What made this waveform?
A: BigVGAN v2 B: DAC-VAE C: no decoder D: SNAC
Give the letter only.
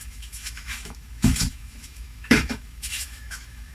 B